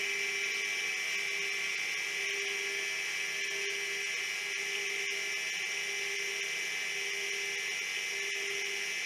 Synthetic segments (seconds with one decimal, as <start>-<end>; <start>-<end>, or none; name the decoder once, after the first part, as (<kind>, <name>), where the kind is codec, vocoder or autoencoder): none